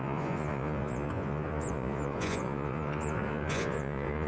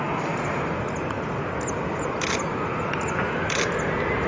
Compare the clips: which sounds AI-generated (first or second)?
first